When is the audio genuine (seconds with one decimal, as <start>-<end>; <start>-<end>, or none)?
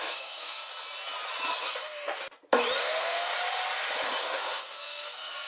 0.7-1.6; 2.1-2.8; 3.3-4.2